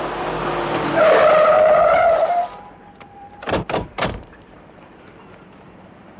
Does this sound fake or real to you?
fake